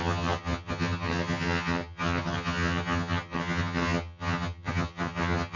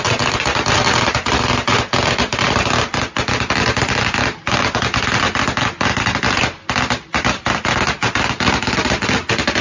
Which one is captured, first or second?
second